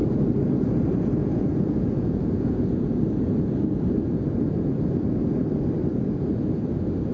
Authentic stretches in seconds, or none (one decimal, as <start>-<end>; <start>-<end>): 0.0-1.2; 3.0-7.1